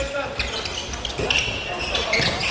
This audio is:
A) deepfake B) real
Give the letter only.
B